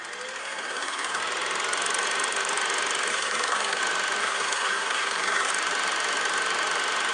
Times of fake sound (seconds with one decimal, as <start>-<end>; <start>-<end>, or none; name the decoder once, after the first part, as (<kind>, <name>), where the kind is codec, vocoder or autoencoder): 0.4-1.2 (codec, SNAC); 3.1-3.8; 4.2-5.5